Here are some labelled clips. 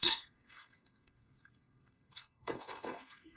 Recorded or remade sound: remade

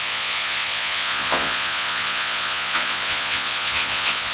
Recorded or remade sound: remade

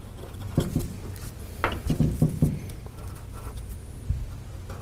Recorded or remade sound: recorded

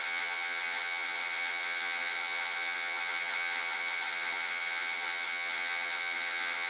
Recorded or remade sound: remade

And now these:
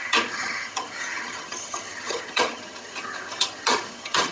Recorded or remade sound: remade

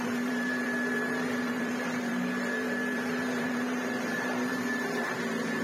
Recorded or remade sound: remade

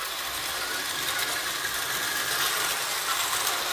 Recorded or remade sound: recorded